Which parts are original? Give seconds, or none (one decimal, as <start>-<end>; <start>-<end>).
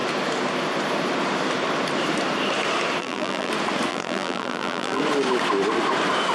0.0-3.0; 3.5-3.9; 5.0-6.3